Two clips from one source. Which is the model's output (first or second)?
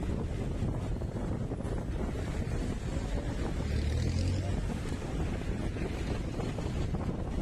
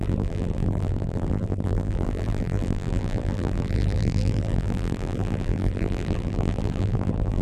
second